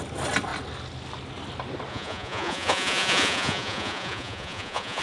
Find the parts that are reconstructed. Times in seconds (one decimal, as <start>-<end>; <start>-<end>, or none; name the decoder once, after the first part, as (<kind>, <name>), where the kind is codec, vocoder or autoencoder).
1.9-5.0 (vocoder, Vocos)